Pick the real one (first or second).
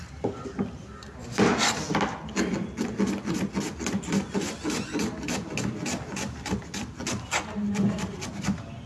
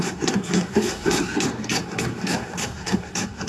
first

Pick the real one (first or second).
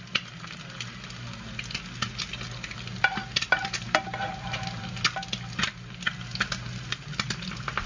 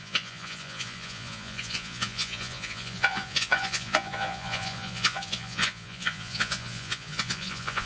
first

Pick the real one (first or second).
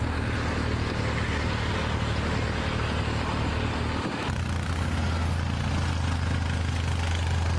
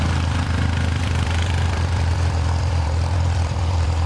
first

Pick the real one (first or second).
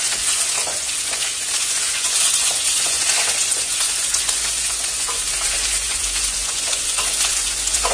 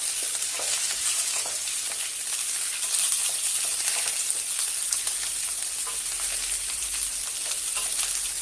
second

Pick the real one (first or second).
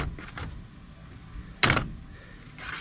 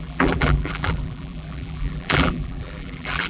first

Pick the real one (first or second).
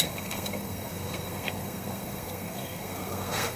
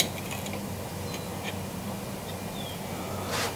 second